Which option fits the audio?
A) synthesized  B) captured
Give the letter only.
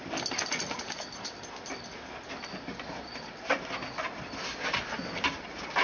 B